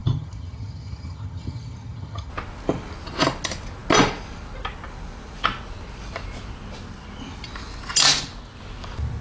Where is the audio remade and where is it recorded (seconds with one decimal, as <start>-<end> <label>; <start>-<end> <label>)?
0.0-2.3 remade; 2.3-9.2 recorded